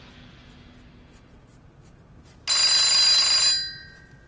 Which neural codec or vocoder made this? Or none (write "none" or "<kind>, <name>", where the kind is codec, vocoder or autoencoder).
none